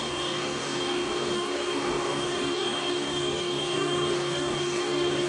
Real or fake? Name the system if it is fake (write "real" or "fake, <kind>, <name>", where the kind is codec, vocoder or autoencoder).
fake, codec, DAC